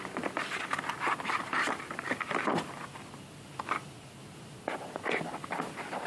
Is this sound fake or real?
real